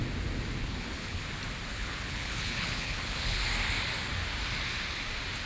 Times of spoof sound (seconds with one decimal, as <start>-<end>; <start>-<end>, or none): 0.6-1.2; 1.7-3.4